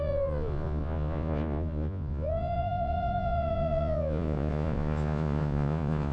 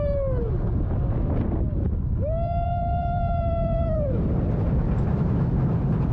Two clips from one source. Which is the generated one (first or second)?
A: first